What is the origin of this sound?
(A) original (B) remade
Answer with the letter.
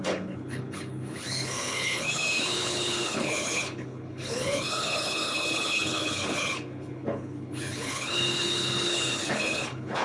B